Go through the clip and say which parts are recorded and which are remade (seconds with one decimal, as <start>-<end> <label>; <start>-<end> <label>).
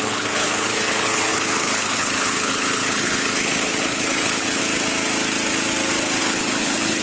0.0-4.6 remade; 4.6-6.2 recorded; 6.2-7.0 remade